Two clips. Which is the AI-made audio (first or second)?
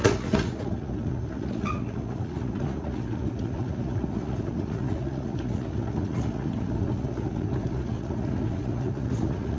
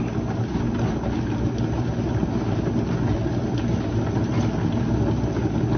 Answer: first